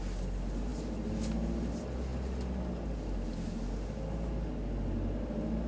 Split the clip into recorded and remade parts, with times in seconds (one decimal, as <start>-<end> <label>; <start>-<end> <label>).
0.0-5.7 recorded